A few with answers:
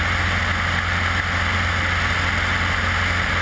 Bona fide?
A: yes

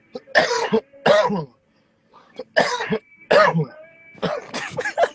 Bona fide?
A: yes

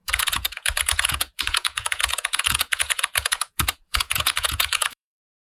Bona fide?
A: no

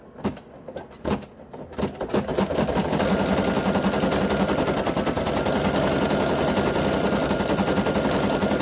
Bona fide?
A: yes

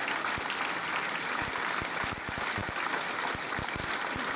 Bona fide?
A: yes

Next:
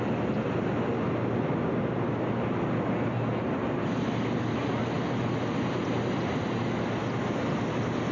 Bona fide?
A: yes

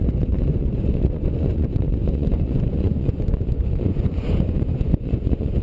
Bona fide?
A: no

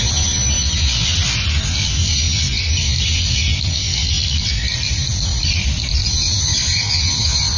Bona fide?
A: yes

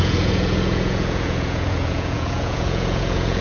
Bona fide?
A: no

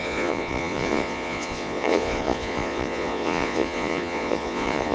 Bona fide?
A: no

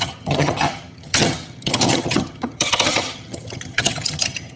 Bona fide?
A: no